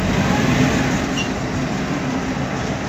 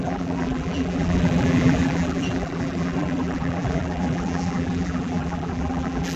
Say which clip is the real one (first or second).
first